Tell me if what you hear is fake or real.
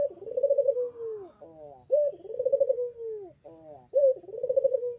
real